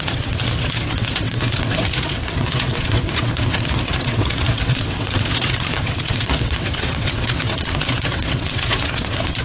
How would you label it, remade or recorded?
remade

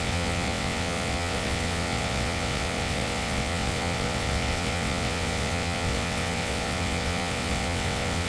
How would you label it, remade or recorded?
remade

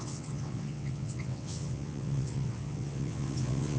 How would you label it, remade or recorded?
remade